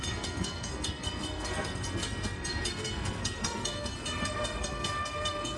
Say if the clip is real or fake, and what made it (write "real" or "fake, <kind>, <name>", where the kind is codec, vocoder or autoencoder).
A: fake, codec, SNAC